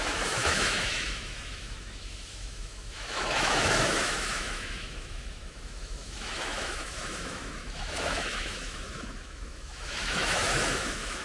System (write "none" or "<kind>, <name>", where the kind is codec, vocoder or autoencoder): autoencoder, DAC-VAE